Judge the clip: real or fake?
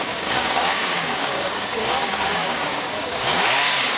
fake